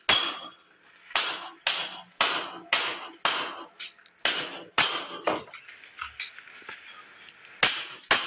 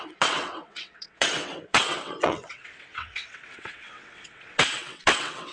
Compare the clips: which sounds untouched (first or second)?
first